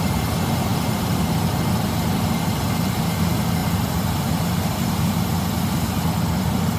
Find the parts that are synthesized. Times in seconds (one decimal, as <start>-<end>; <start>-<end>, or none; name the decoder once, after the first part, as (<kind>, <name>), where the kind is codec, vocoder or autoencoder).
3.6-5.4 (vocoder, BigVGAN v2)